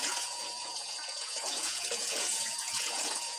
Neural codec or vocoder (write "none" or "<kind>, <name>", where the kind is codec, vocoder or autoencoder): vocoder, Vocos